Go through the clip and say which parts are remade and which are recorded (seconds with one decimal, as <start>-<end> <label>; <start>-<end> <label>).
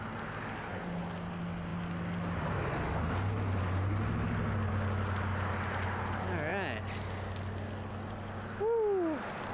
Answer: 0.0-9.5 recorded